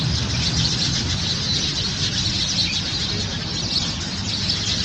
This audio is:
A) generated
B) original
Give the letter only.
B